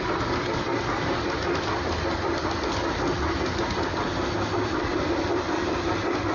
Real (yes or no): yes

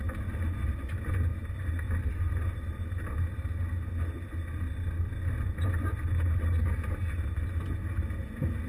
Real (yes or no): yes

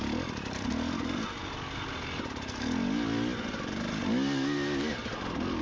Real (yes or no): yes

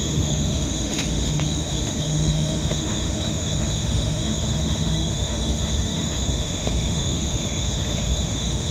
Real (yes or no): no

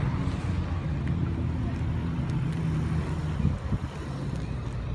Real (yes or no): yes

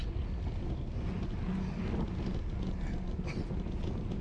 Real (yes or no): yes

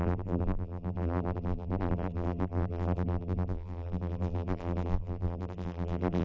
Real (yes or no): no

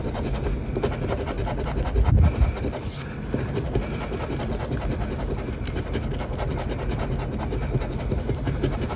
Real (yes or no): yes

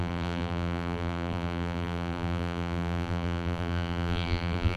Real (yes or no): no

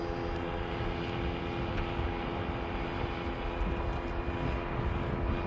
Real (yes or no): yes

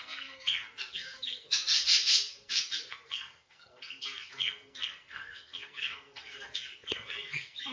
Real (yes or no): no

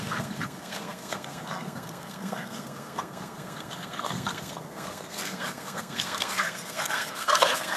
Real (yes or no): no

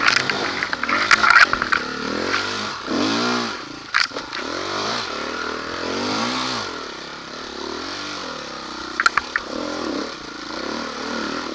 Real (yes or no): yes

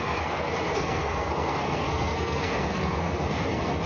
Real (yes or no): no